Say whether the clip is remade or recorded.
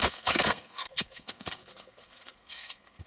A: remade